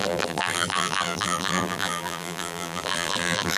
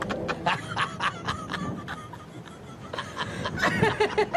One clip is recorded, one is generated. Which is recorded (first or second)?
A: second